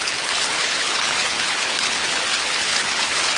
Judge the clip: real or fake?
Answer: fake